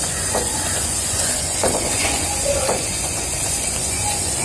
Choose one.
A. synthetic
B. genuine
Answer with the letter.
A